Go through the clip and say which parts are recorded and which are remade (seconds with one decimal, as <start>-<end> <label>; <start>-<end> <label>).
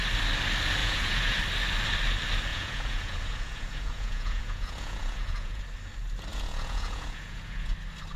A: 0.0-0.8 recorded; 0.8-1.4 remade; 1.4-2.5 recorded; 2.5-5.6 remade; 5.6-6.3 recorded; 6.3-7.7 remade; 7.7-8.2 recorded